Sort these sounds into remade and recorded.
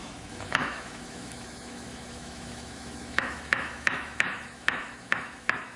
remade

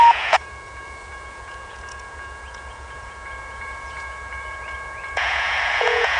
remade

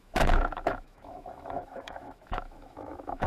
remade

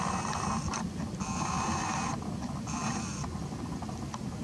recorded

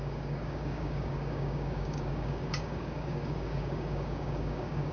remade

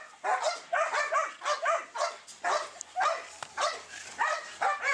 recorded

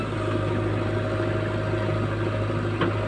recorded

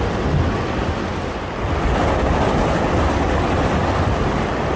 recorded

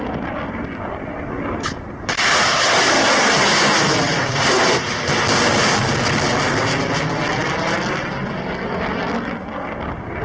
recorded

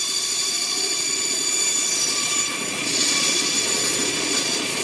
remade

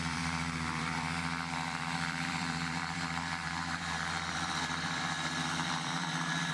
remade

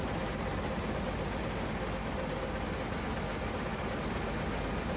recorded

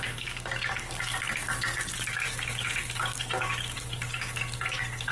remade